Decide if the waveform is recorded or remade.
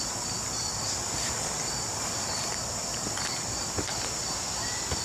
recorded